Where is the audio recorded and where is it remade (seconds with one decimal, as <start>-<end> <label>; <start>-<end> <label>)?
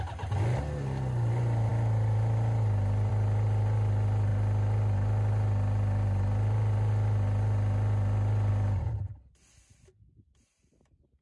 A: 0.0-11.2 recorded